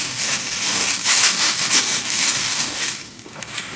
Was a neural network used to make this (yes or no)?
yes